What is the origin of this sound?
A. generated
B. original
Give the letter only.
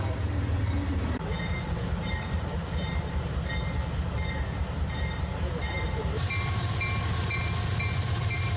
A